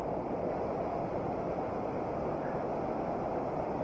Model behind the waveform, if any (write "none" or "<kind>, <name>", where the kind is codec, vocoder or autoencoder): none